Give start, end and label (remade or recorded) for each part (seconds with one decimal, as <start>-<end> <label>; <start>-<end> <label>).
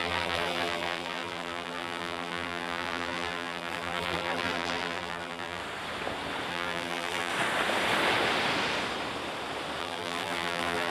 0.0-5.6 remade; 5.6-6.5 recorded; 6.5-7.3 remade; 7.3-9.8 recorded; 9.8-10.9 remade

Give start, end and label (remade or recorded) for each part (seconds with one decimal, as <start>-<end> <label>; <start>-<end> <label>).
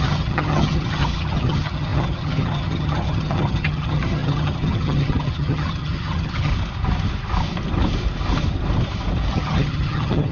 0.0-6.5 remade; 6.5-9.3 recorded; 9.3-10.3 remade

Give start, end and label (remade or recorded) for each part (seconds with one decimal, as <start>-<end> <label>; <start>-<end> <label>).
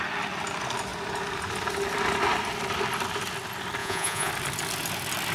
0.0-3.8 recorded; 3.8-4.3 remade; 4.3-5.3 recorded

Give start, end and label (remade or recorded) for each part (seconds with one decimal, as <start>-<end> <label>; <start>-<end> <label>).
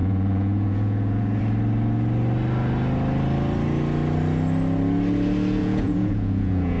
0.0-1.4 remade; 1.4-5.6 recorded; 5.6-6.8 remade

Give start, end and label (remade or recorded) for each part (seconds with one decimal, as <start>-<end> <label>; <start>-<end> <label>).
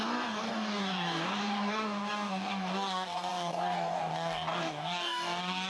0.0-5.7 remade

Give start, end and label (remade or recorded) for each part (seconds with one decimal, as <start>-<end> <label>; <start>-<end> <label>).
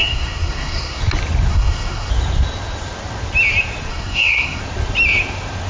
0.0-1.0 remade; 1.0-1.5 recorded; 1.5-2.1 remade; 2.1-3.9 recorded; 3.9-4.6 remade; 4.6-5.7 recorded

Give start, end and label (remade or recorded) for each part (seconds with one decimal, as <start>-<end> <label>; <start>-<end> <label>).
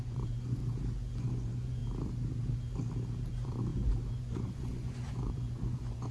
0.0-0.6 remade; 0.6-1.2 recorded; 1.2-1.8 remade; 1.8-3.3 recorded; 3.3-6.1 remade